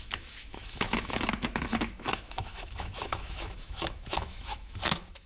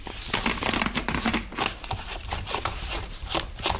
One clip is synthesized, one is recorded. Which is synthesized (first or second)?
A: first